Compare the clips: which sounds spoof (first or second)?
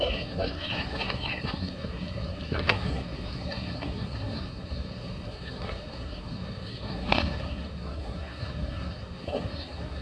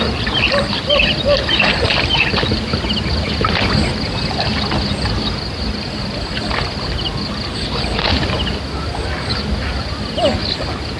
first